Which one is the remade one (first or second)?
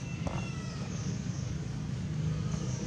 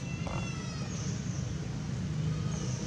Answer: first